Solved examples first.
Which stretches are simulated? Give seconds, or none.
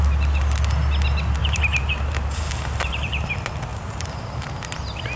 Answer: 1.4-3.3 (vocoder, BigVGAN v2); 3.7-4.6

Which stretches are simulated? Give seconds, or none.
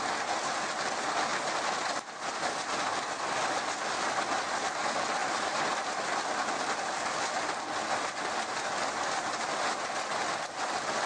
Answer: 5.2-6.9 (vocoder, BigVGAN v2)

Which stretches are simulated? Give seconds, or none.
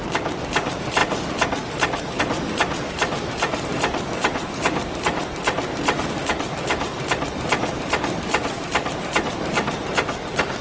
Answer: 0.0-1.0 (vocoder, BigVGAN v2); 2.2-10.6